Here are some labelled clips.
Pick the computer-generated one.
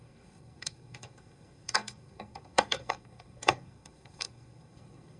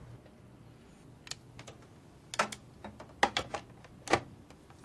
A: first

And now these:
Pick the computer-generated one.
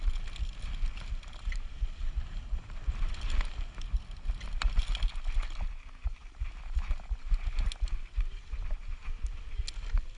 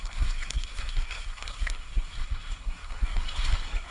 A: second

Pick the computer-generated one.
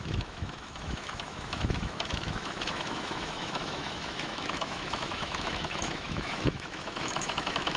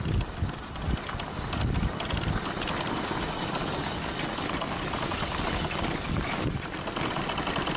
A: first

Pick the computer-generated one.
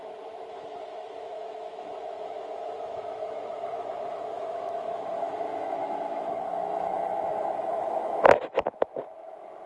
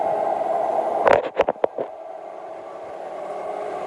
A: first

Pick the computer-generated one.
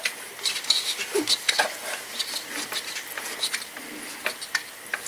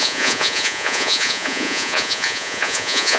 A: second